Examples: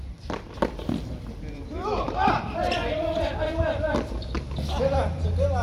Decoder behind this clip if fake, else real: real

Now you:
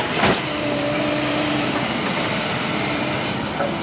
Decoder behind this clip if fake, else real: fake, vocoder, BigVGAN v2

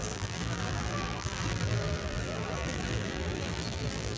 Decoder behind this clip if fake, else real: fake, vocoder, BigVGAN v2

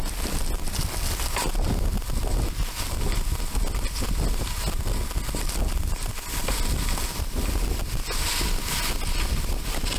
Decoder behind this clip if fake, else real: real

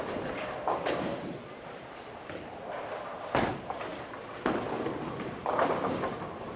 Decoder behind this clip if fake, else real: fake, vocoder, BigVGAN v2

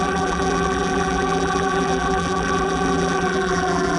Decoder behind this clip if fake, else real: fake, vocoder, BigVGAN v2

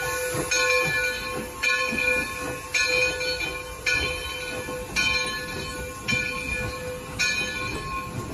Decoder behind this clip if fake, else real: real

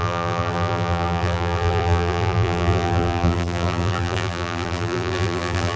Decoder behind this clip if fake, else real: fake, vocoder, BigVGAN v2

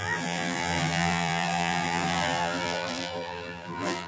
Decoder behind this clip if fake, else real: fake, vocoder, BigVGAN v2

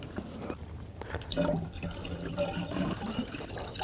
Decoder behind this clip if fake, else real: fake, vocoder, BigVGAN v2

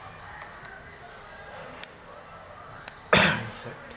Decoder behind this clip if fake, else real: real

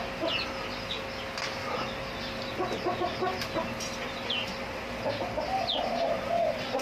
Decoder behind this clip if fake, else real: real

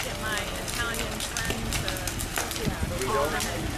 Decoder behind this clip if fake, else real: real